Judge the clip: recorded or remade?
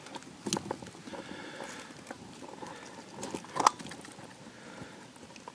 recorded